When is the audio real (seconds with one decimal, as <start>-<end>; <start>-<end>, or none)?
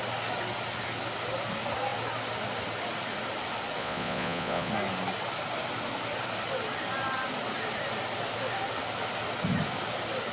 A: 0.0-3.8; 4.7-10.3